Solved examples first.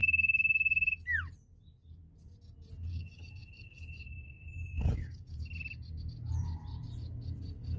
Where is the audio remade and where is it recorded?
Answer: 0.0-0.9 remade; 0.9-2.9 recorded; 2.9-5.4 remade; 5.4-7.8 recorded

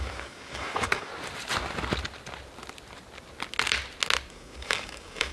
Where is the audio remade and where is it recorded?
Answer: 0.0-1.1 remade; 1.1-4.3 recorded; 4.3-5.3 remade

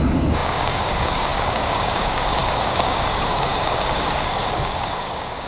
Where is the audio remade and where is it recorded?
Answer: 0.0-5.5 remade

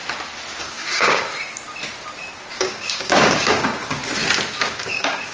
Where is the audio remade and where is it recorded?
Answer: 0.0-0.6 recorded; 0.6-1.3 remade; 1.3-2.5 recorded; 2.5-4.0 remade; 4.0-4.6 recorded; 4.6-5.3 remade

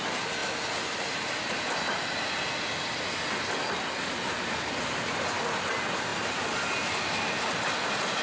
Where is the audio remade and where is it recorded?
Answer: 0.0-8.2 recorded